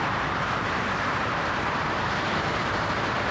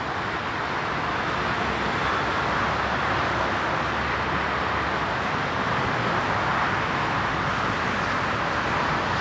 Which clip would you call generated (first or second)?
first